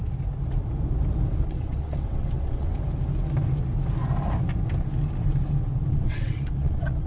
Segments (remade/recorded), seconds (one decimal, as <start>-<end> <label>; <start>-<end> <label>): 0.0-1.5 recorded; 1.5-2.7 remade; 2.7-5.9 recorded; 5.9-7.1 remade